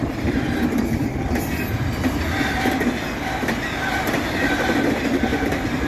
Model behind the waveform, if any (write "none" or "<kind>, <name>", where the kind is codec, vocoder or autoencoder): none